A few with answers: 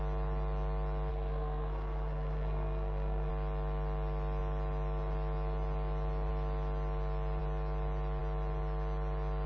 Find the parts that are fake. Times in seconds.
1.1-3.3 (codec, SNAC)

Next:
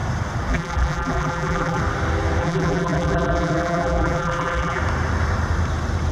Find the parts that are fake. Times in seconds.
0.5-1.8 (vocoder, BigVGAN v2); 2.4-4.8

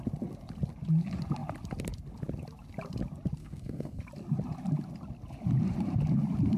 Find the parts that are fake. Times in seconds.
3.4-4.0 (codec, SNAC)

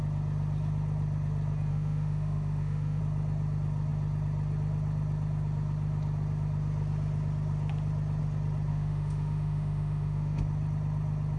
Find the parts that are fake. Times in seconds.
1.7-3.0 (autoencoder, DAC-VAE); 8.7-10.4

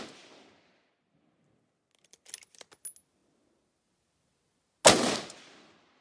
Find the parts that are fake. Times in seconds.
none

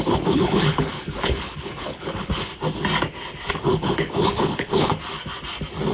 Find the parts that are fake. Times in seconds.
0.0-2.5 (codec, HILCodec); 3.5-4.9

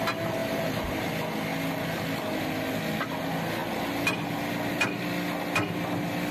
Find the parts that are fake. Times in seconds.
0.4-1.1 (vocoder, BigVGAN v2)

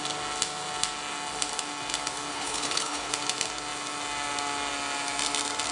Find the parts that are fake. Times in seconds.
2.3-3.1 (codec, HILCodec)